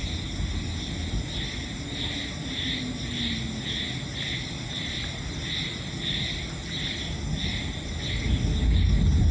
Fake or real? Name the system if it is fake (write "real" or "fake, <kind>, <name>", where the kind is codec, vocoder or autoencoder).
real